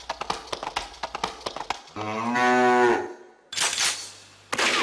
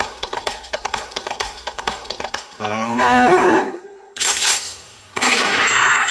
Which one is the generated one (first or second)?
second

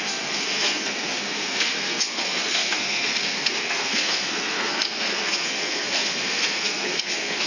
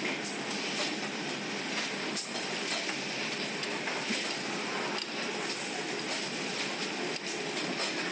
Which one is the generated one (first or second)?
first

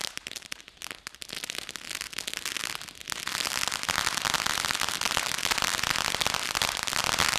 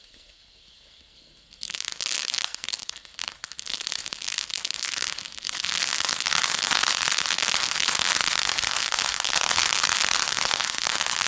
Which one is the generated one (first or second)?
second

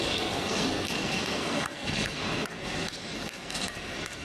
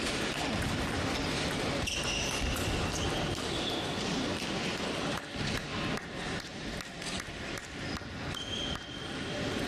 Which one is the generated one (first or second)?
first